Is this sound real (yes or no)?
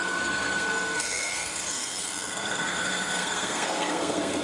no